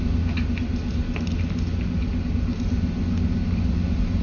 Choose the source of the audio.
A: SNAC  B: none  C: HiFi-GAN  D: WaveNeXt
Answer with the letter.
B